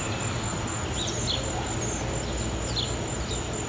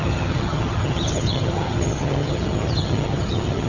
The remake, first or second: second